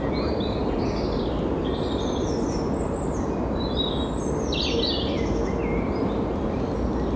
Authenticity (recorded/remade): recorded